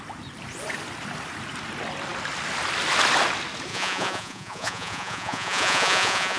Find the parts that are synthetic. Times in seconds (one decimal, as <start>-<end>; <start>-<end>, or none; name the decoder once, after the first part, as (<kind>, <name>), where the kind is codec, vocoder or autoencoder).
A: 3.7-6.4 (vocoder, Vocos)